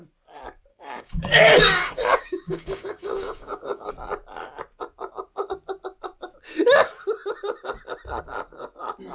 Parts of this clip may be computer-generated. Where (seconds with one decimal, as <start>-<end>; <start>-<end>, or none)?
0.7-3.9